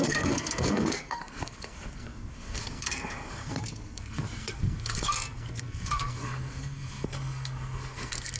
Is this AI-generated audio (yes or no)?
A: yes